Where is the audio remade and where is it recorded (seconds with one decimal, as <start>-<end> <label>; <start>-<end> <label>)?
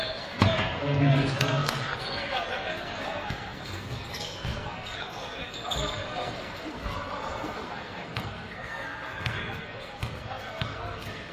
0.0-11.3 remade